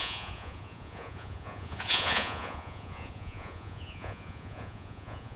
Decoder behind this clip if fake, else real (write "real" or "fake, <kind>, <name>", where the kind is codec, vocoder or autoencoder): fake, vocoder, Vocos